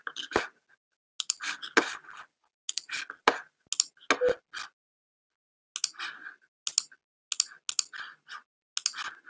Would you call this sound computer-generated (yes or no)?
no